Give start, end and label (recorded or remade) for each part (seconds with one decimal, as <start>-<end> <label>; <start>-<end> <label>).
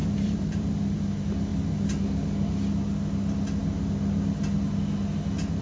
0.0-1.0 remade; 1.0-5.6 recorded